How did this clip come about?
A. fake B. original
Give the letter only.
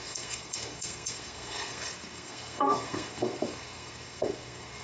A